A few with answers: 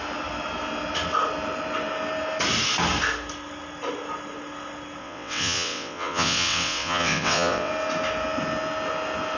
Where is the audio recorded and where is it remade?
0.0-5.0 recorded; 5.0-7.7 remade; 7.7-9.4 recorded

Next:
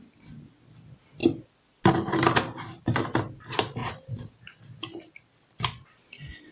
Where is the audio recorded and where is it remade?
0.0-3.8 recorded; 3.8-5.6 remade; 5.6-6.5 recorded